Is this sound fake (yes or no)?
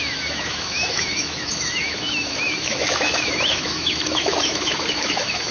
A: yes